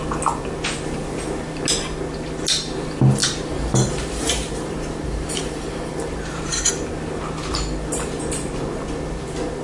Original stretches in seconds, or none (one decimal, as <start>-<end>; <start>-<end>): 0.0-3.2; 6.7-9.6